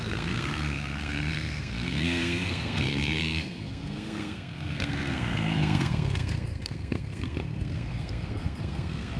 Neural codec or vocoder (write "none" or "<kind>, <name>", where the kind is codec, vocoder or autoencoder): codec, SNAC